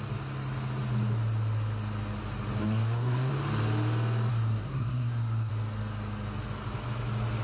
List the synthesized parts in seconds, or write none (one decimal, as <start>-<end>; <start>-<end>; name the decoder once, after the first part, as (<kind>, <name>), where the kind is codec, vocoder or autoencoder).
2.6-3.3 (codec, SNAC); 4.3-5.5